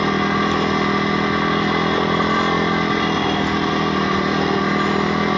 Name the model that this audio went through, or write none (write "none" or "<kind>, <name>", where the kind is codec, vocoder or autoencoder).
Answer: none